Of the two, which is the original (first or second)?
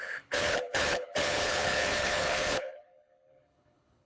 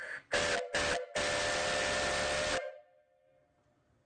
second